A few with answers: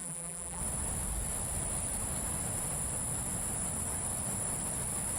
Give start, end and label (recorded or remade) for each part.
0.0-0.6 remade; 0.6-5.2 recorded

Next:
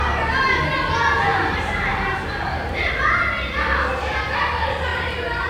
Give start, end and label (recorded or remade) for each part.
0.0-1.3 recorded; 1.3-2.9 remade; 2.9-4.9 recorded; 4.9-5.5 remade

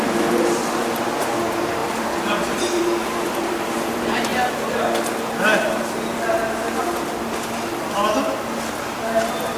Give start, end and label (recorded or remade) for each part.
0.0-4.3 remade; 4.3-9.2 recorded; 9.2-9.6 remade

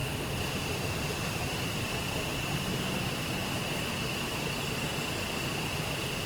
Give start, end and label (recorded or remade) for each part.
0.0-1.9 remade; 1.9-2.3 recorded; 2.3-3.1 remade; 3.1-4.9 recorded; 4.9-6.3 remade

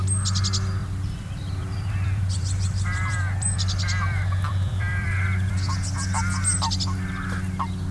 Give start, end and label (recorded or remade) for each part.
0.0-0.8 recorded; 0.8-5.5 remade; 5.5-7.9 recorded